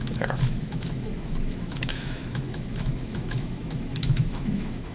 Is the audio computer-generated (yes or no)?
yes